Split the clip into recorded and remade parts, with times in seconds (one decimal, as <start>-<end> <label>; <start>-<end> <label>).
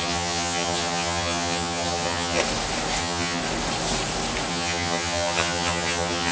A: 0.0-2.4 remade; 2.4-3.0 recorded; 3.0-3.4 remade; 3.4-4.5 recorded; 4.5-6.3 remade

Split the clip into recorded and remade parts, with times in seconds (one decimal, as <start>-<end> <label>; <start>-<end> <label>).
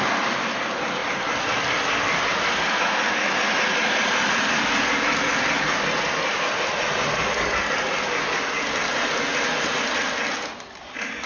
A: 0.0-11.3 recorded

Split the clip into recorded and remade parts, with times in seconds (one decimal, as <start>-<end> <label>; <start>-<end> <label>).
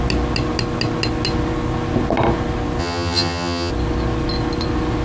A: 0.0-2.8 recorded; 2.8-3.7 remade; 3.7-5.0 recorded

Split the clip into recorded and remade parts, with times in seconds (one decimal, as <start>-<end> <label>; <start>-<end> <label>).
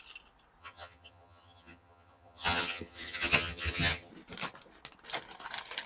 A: 0.0-0.6 recorded; 0.6-4.1 remade; 4.1-5.9 recorded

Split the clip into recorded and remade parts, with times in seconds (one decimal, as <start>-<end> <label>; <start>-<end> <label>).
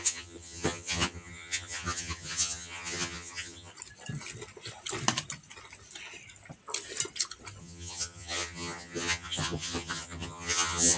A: 0.0-3.7 remade; 3.7-7.6 recorded; 7.6-11.0 remade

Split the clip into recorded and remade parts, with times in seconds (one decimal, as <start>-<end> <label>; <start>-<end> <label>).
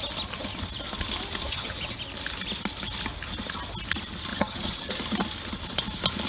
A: 0.0-1.5 recorded; 1.5-2.0 remade; 2.0-4.3 recorded; 4.3-4.9 remade; 4.9-6.3 recorded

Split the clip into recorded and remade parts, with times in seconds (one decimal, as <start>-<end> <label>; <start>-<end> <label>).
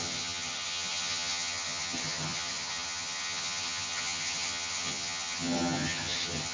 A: 0.0-6.5 remade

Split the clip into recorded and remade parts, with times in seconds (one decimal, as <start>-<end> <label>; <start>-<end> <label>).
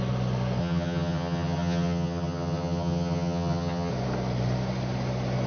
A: 0.0-0.6 recorded; 0.6-3.9 remade; 3.9-5.5 recorded